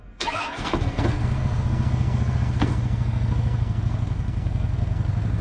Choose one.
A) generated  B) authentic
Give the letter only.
A